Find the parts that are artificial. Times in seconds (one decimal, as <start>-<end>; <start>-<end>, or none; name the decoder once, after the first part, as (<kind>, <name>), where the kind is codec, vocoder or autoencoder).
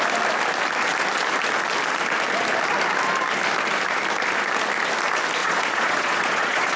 5.4-6.8 (vocoder, Vocos)